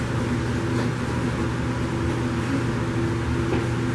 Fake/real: real